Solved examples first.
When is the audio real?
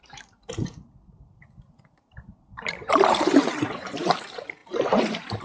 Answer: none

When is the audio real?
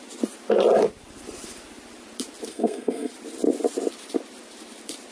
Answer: 0.0-2.5; 3.1-5.1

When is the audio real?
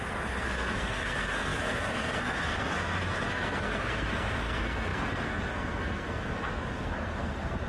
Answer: none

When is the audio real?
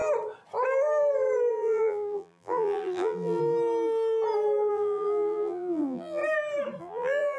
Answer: 0.0-1.5; 3.4-4.7; 6.2-6.8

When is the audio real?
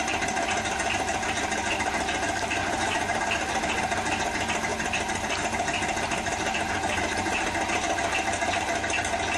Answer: 0.0-2.6; 3.2-9.4